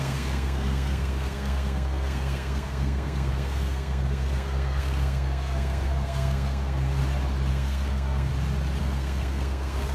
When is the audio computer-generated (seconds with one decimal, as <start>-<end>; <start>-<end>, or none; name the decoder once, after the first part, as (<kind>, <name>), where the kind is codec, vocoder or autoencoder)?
0.0-7.0 (codec, SNAC); 7.5-8.3; 8.8-9.9